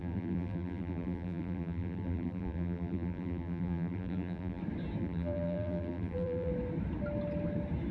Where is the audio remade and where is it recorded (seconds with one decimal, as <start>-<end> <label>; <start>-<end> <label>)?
0.0-4.6 remade; 4.6-5.0 recorded; 5.0-6.5 remade; 6.5-7.9 recorded